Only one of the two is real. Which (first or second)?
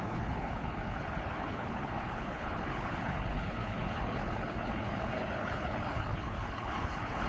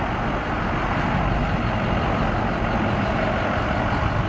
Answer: second